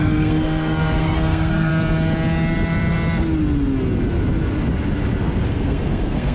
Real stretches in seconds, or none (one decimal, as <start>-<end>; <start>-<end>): 1.7-5.5